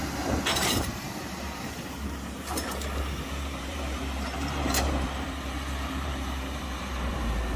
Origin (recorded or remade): remade